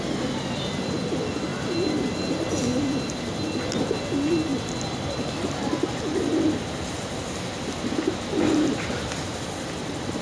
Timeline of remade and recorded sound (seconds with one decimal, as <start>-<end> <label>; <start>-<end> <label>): 0.0-10.2 recorded